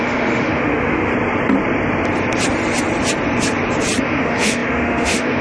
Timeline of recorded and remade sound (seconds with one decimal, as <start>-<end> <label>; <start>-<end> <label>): 0.0-1.1 remade; 1.1-4.0 recorded; 4.0-5.4 remade